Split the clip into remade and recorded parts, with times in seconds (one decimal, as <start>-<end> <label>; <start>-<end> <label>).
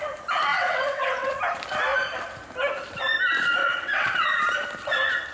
0.0-0.5 recorded; 0.5-1.3 remade; 1.3-3.6 recorded; 3.6-4.3 remade; 4.3-5.3 recorded